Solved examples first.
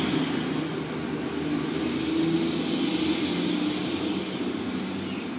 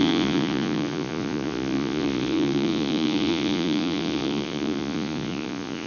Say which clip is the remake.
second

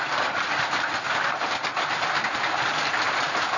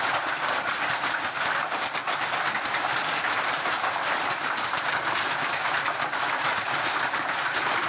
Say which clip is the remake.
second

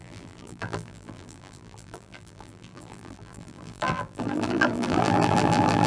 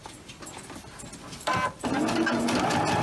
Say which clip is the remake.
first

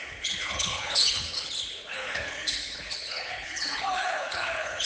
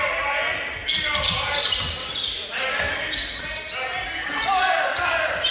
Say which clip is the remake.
first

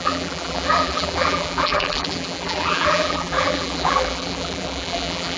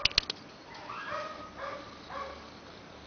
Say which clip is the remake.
first